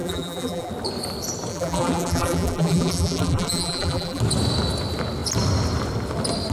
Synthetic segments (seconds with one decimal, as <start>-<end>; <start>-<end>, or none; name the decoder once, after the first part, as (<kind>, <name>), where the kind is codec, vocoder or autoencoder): 0.0-0.7 (vocoder, BigVGAN v2); 1.5-4.2